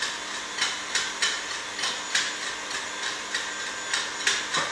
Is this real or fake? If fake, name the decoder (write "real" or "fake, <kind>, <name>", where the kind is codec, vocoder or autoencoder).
real